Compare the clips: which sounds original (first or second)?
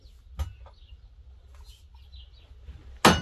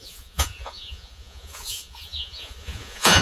first